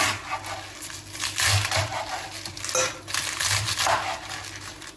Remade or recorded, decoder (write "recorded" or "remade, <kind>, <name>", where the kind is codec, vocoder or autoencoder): recorded